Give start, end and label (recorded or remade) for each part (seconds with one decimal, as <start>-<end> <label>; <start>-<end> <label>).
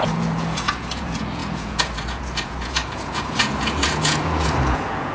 0.0-5.1 remade